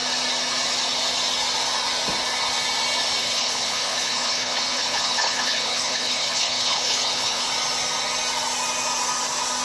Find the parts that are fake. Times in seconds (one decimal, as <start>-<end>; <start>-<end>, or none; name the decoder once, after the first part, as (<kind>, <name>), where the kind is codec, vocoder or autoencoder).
3.2-7.5 (codec, HILCodec)